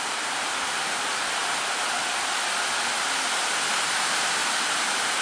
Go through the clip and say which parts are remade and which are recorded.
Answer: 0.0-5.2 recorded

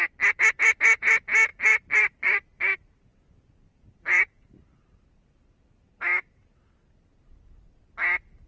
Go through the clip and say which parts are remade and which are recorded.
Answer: 0.0-1.5 recorded; 1.5-6.6 remade; 6.6-8.5 recorded

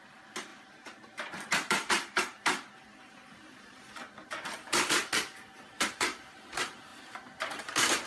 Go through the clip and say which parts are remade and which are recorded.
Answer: 0.0-3.8 remade; 3.8-4.3 recorded; 4.3-5.0 remade; 5.0-5.7 recorded; 5.7-8.1 remade

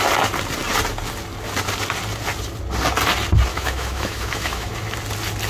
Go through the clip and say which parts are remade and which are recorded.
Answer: 0.0-3.5 recorded; 3.5-4.7 remade; 4.7-5.5 recorded

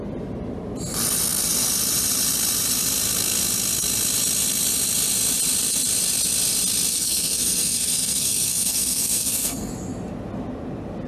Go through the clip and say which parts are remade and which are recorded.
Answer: 0.0-6.9 recorded; 6.9-9.7 remade; 9.7-11.1 recorded

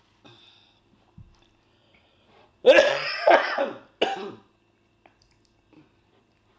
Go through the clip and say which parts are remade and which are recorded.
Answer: 0.0-1.8 recorded; 1.8-3.6 remade; 3.6-6.6 recorded

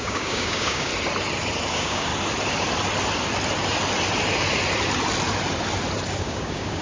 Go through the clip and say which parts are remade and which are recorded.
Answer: 0.0-0.9 remade; 0.9-1.7 recorded; 1.7-2.1 remade; 2.1-6.2 recorded; 6.2-6.8 remade